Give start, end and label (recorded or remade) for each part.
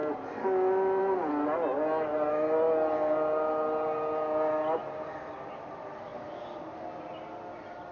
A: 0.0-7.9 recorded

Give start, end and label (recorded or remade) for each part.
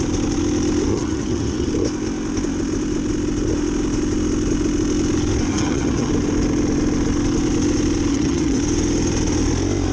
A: 0.0-0.9 recorded; 0.9-1.7 remade; 1.7-5.5 recorded; 5.5-6.1 remade; 6.1-8.1 recorded; 8.1-8.6 remade; 8.6-9.9 recorded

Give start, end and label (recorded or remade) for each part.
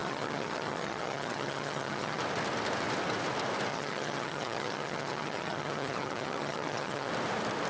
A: 0.0-2.2 remade; 2.2-3.7 recorded; 3.7-7.1 remade; 7.1-7.7 recorded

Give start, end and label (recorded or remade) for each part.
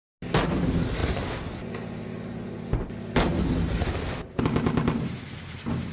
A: 0.0-5.9 recorded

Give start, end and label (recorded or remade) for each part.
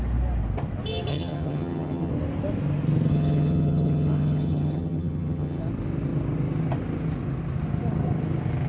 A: 0.0-1.1 recorded; 1.1-2.1 remade; 2.1-3.1 recorded; 3.1-5.6 remade; 5.6-8.7 recorded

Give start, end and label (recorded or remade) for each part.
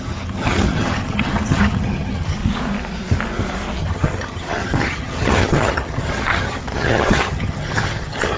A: 0.0-2.4 remade; 2.4-3.8 recorded; 3.8-8.4 remade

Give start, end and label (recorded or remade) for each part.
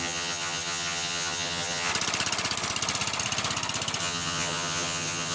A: 0.0-1.9 remade; 1.9-4.0 recorded; 4.0-5.3 remade